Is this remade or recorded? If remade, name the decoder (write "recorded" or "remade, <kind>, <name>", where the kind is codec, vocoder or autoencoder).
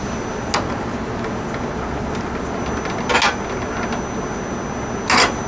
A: recorded